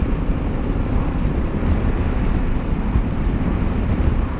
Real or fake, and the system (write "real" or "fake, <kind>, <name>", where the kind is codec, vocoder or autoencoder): real